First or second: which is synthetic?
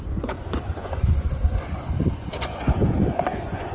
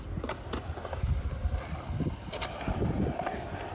first